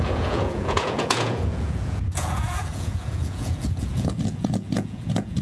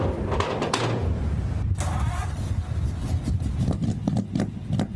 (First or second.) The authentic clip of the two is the second